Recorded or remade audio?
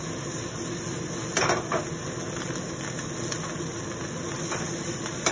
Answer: recorded